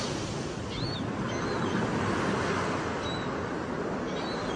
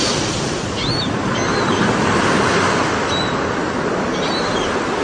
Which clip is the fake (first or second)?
second